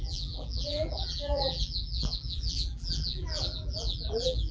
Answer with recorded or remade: remade